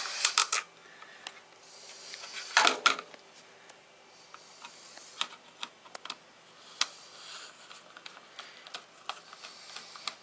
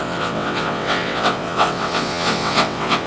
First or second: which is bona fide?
first